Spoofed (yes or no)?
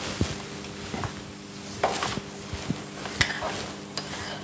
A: no